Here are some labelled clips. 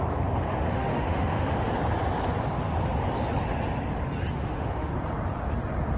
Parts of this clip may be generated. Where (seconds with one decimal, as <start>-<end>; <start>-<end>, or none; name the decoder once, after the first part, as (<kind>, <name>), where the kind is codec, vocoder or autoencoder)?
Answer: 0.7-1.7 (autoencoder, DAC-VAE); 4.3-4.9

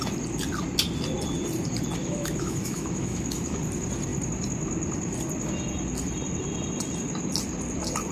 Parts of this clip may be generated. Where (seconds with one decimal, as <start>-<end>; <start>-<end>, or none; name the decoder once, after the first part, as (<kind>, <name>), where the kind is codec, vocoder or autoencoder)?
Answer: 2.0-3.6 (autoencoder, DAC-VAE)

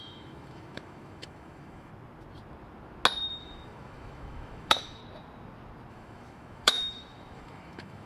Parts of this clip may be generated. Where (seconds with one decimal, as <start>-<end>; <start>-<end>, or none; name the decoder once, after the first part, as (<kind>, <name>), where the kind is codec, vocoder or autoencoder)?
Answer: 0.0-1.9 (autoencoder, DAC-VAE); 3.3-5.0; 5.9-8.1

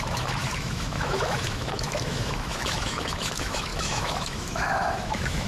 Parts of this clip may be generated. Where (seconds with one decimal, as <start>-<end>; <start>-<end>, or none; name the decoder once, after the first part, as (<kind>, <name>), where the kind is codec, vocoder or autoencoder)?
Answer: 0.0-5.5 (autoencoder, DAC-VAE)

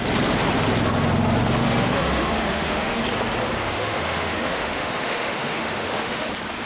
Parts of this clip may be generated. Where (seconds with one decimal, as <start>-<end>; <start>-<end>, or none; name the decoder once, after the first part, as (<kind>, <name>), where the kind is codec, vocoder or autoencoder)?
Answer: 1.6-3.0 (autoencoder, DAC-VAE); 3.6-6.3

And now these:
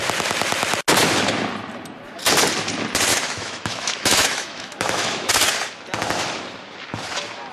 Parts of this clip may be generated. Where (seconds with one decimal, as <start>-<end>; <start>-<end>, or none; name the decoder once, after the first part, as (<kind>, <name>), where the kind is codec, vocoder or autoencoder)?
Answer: 3.1-5.3 (autoencoder, DAC-VAE)

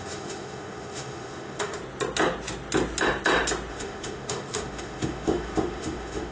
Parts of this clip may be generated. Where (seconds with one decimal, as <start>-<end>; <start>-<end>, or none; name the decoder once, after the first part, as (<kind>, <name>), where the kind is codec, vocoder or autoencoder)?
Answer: 0.0-1.8 (autoencoder, DAC-VAE); 3.7-6.3

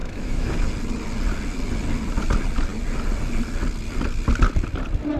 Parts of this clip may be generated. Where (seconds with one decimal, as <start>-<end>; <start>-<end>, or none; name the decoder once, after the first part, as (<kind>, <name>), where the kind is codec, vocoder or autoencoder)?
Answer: 0.0-0.5 (autoencoder, DAC-VAE)